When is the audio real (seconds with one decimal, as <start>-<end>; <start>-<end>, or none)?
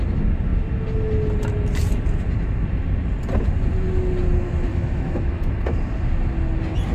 0.0-4.7; 5.5-6.9